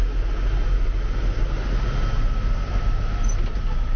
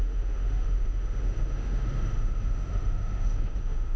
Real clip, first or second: first